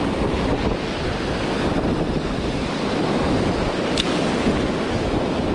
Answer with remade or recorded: recorded